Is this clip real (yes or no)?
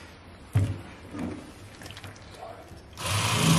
yes